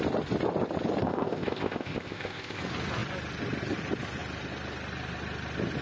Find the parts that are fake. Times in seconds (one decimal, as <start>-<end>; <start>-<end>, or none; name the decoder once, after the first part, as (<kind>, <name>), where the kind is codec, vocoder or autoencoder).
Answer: 1.0-2.6 (codec, ZipCodec)